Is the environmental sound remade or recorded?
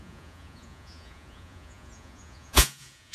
remade